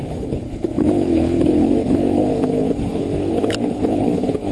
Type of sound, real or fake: fake